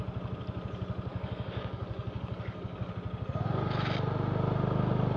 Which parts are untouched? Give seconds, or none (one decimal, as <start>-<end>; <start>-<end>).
0.0-1.1; 2.9-5.2

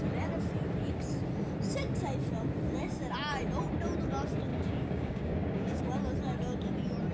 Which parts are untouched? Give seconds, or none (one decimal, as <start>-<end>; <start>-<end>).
0.0-4.5; 5.8-7.1

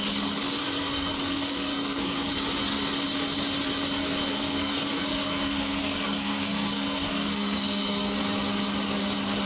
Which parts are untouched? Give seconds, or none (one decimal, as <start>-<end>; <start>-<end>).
0.0-0.6; 2.3-4.3; 8.2-9.5

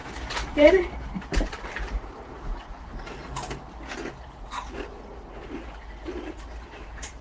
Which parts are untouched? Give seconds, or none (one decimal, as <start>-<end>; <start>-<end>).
2.9-5.8

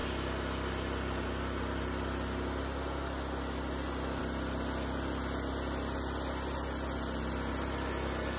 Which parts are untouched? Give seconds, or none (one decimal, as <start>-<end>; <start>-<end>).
0.0-8.4

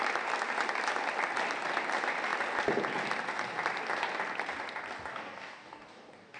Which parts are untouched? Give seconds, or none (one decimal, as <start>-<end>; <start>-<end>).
0.0-5.1

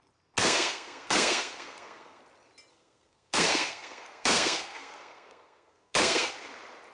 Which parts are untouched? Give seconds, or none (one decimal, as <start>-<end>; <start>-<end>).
0.0-0.4; 2.2-2.7; 6.3-6.9